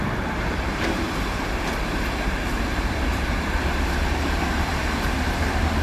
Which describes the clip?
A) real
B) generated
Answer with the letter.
B